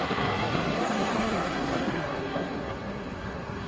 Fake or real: fake